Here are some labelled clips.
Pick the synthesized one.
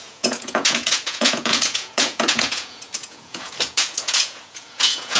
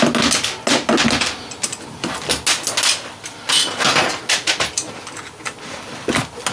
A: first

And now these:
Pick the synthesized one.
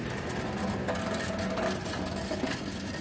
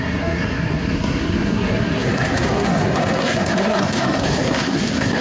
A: second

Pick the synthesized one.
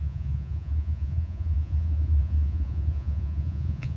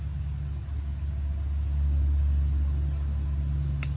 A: first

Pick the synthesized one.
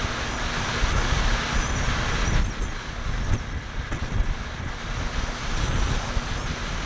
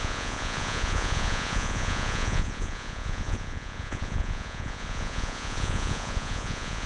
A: second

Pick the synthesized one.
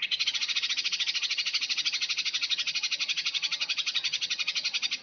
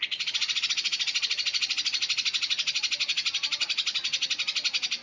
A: first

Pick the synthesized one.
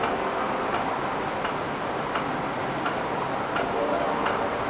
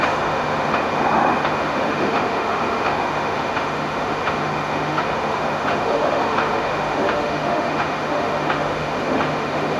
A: second